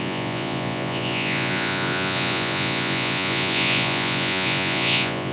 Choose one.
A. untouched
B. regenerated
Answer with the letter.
B